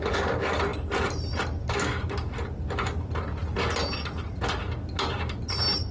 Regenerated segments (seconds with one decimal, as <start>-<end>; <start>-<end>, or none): none